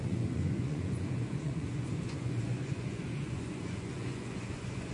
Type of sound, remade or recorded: remade